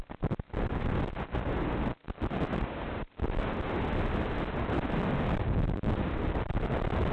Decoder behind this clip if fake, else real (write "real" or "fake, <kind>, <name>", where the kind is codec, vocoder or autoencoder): real